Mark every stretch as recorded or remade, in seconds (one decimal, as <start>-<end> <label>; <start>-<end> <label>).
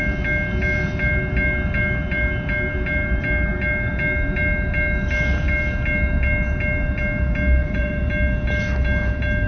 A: 0.0-7.6 recorded; 7.6-8.1 remade; 8.1-9.5 recorded